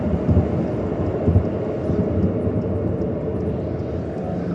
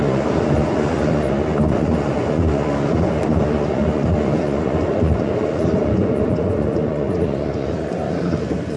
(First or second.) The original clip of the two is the first